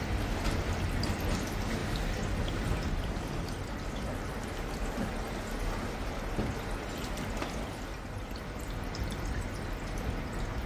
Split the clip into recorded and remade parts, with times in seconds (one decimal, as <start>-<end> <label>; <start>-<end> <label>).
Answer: 0.0-10.7 recorded